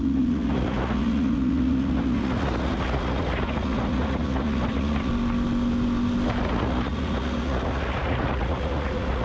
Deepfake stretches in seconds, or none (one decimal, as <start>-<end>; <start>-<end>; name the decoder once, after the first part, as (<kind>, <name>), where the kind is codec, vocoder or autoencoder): 0.0-5.1 (vocoder, Vocos); 6.4-9.2